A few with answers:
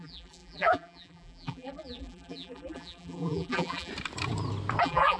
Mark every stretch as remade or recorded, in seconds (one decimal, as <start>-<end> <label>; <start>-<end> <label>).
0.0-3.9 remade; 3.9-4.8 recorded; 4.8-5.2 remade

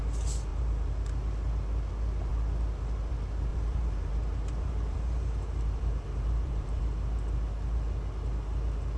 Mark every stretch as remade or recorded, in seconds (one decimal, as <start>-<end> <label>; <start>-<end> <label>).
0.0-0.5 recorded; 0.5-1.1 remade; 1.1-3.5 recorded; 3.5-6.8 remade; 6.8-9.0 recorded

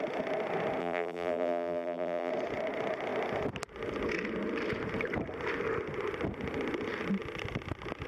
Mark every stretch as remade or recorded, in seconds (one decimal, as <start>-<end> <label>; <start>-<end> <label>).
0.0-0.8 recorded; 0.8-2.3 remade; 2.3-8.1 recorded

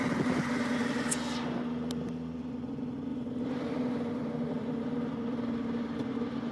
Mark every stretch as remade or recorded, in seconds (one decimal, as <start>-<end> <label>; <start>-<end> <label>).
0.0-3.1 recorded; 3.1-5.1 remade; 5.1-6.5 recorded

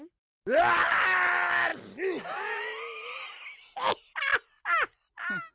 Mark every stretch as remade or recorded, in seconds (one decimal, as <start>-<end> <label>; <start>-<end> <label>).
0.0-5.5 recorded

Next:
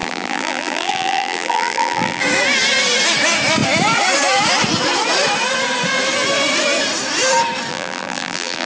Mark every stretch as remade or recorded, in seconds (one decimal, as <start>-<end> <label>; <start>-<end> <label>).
0.0-2.2 remade; 2.2-7.7 recorded; 7.7-8.7 remade